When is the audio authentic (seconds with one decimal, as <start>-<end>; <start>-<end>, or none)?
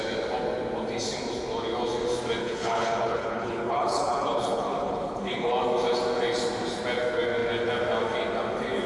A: 0.0-2.4; 5.5-8.9